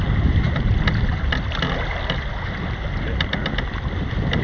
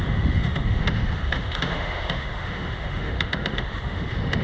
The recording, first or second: first